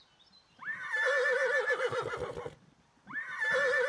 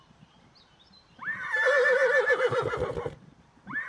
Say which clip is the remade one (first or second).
second